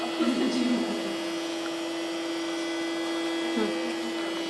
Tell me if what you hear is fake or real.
real